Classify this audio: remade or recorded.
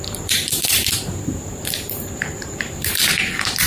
remade